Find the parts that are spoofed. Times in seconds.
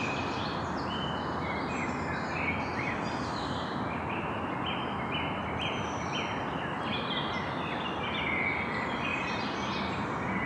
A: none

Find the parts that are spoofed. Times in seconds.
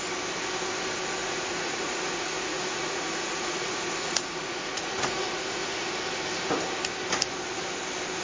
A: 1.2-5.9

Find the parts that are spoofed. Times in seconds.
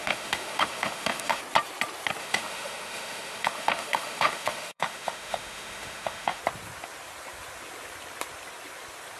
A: 0.0-1.4; 2.2-6.4